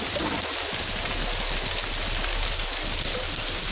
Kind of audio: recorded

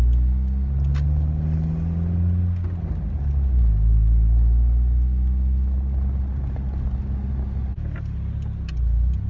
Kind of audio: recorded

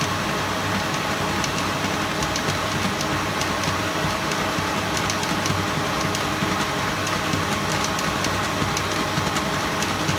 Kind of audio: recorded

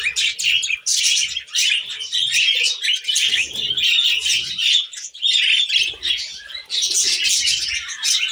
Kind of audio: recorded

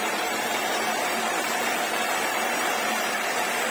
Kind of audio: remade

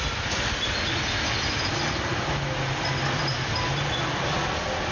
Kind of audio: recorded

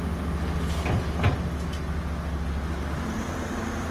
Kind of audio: recorded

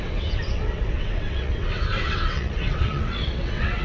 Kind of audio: remade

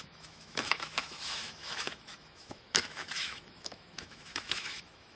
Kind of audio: remade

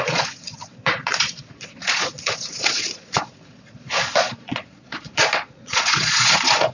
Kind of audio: remade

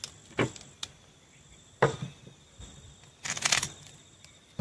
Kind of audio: recorded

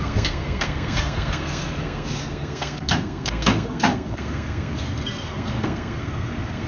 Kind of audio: remade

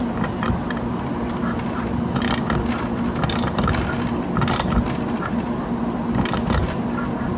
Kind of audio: recorded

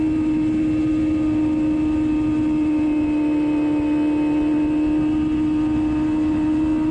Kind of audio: recorded